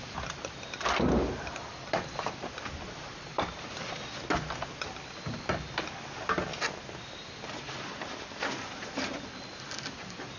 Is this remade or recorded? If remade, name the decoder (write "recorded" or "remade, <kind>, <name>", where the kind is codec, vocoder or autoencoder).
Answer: recorded